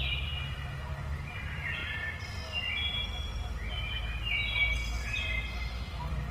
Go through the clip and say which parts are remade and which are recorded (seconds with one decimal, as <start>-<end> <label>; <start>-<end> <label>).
0.0-1.8 remade; 1.8-5.0 recorded; 5.0-6.3 remade